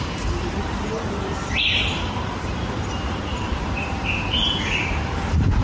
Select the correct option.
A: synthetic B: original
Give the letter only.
A